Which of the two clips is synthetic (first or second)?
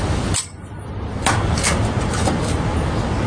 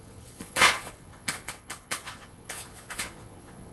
second